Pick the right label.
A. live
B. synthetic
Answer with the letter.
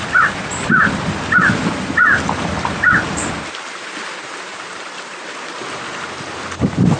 A